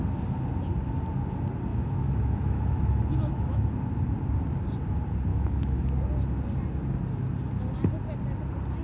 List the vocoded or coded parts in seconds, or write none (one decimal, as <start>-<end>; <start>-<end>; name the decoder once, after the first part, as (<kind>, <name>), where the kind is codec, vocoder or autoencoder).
1.7-3.7 (autoencoder, DAC-VAE); 5.3-5.9